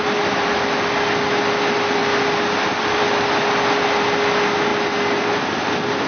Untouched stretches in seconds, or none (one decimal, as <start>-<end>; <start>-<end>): 0.0-6.1